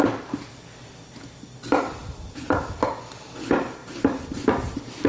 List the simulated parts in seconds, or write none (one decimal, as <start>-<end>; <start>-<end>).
2.0-2.6; 3.8-5.1